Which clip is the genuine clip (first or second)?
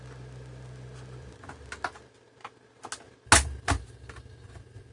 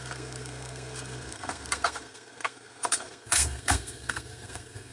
first